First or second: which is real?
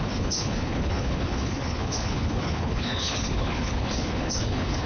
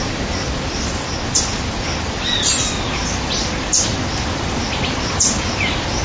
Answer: second